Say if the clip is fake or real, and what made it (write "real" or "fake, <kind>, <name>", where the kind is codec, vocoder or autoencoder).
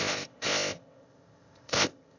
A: fake, codec, ZipCodec